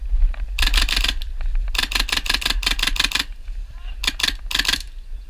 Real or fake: real